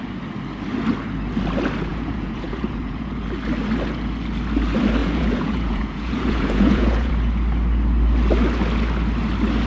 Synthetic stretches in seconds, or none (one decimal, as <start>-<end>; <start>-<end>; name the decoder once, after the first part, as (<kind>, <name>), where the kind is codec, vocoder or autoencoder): 1.9-3.2 (vocoder, Vocos); 5.0-7.1